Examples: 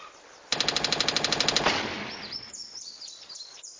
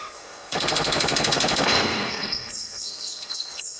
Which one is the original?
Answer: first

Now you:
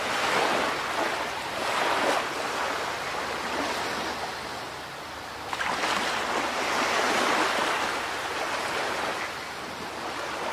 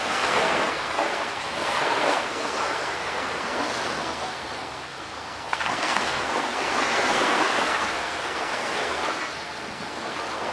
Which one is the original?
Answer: first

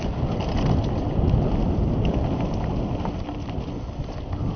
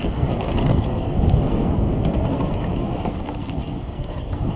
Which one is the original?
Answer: first